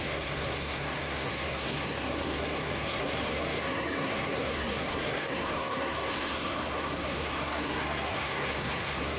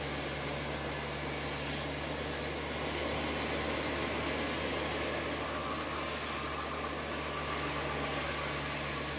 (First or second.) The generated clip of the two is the first